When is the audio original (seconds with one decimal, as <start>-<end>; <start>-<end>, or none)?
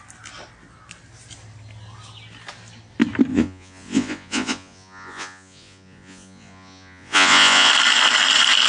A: 0.0-3.3; 7.7-8.7